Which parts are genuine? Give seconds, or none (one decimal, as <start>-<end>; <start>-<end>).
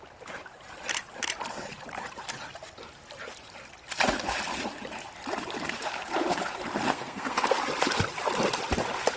0.0-6.9; 7.6-9.2